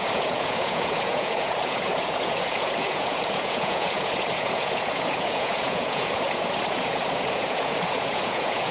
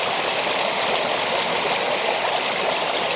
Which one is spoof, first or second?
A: first